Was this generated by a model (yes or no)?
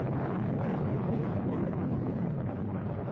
yes